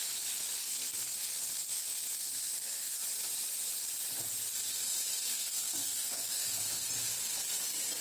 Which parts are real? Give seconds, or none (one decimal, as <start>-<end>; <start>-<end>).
0.0-0.6; 3.0-5.3; 6.9-8.0